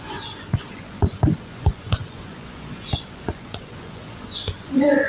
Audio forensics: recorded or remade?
remade